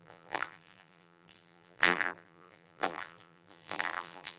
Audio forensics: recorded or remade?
remade